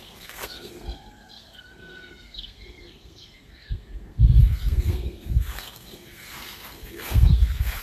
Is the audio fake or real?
fake